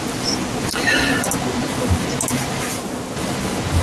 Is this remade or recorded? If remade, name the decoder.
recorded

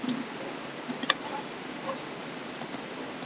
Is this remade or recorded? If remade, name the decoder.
recorded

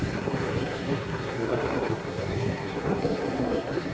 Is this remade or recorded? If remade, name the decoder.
remade, codec, SNAC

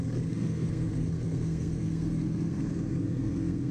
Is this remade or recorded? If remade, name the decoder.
remade, codec, SNAC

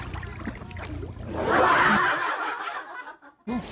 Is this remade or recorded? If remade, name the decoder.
recorded